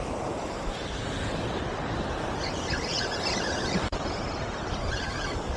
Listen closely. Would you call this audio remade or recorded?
remade